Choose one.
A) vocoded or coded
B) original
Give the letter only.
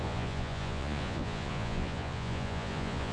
A